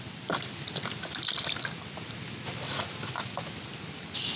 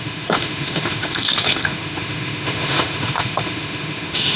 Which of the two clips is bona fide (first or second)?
first